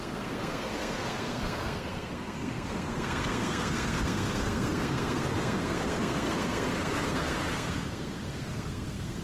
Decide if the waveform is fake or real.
fake